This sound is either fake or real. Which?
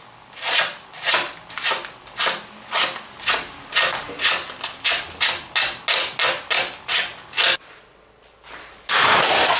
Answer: real